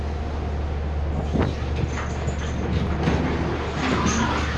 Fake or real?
real